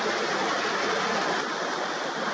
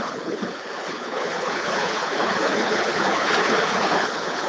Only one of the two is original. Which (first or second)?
first